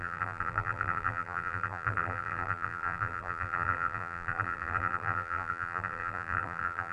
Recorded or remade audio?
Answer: remade